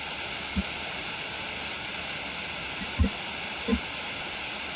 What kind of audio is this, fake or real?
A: real